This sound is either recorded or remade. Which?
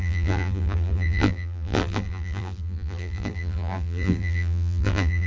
remade